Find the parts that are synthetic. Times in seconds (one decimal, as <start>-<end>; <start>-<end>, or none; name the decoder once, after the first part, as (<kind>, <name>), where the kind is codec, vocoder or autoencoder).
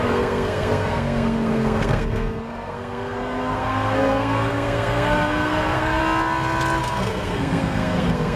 0.0-6.0 (codec, SNAC); 6.8-8.4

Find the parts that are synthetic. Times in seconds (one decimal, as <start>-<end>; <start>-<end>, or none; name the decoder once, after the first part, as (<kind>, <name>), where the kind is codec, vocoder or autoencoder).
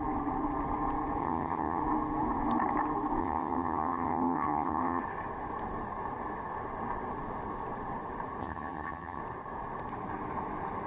1.2-1.8 (vocoder, HiFi-GAN); 3.2-5.0; 8.4-9.2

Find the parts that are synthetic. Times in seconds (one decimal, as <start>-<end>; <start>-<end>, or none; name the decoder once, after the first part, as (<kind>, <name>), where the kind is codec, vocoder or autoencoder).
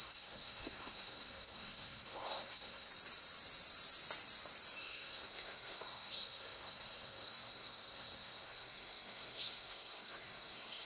0.0-2.9 (codec, SNAC); 4.8-10.8